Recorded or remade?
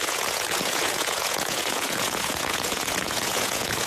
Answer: remade